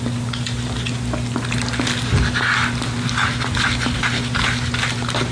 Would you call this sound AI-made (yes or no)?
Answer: no